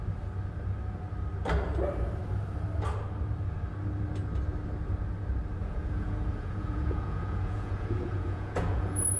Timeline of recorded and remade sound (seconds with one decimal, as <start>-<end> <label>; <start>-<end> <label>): 0.0-5.6 recorded; 5.6-9.2 remade

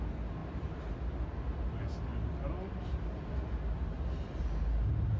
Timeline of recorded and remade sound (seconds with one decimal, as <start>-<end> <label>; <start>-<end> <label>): 0.0-0.4 recorded; 0.4-0.9 remade; 0.9-5.2 recorded

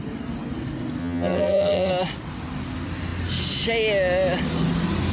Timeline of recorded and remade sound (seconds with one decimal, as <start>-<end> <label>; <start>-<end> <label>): 0.0-1.0 recorded; 1.0-1.9 remade; 1.9-5.1 recorded

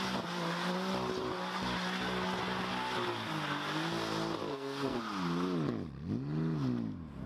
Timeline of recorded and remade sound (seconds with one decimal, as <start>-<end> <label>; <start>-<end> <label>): 0.0-4.5 recorded; 4.5-5.0 remade; 5.0-7.3 recorded

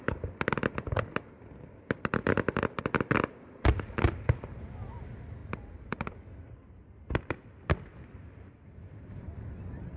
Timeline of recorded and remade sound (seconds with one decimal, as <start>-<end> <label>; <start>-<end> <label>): 0.0-2.2 recorded; 2.2-3.1 remade; 3.1-5.4 recorded; 5.4-9.5 remade; 9.5-10.0 recorded

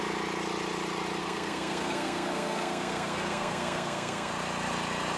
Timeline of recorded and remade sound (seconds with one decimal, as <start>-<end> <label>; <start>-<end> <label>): 0.0-1.2 recorded; 1.2-4.3 remade; 4.3-5.2 recorded

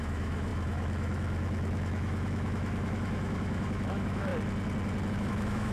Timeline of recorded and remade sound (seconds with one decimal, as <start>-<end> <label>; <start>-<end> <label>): 0.0-4.3 remade; 4.3-5.1 recorded; 5.1-5.7 remade

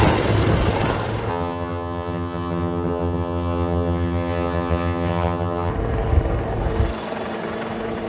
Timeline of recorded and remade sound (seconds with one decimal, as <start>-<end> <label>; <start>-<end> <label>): 0.0-1.3 recorded; 1.3-5.7 remade; 5.7-8.1 recorded